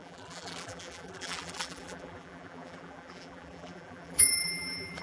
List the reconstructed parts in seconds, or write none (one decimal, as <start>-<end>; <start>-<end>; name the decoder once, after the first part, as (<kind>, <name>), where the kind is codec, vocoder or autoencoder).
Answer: 0.0-5.0 (vocoder, BigVGAN v2)